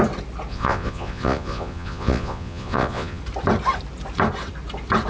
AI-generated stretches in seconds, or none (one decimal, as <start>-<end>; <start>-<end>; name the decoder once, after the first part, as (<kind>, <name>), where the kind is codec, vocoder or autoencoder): 0.5-3.2 (vocoder, Vocos)